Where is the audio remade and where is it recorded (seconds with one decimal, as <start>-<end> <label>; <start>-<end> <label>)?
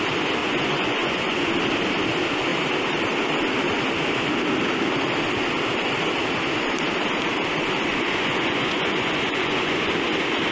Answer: 0.0-0.4 recorded; 0.4-1.5 remade; 1.5-7.9 recorded; 7.9-9.9 remade; 9.9-10.5 recorded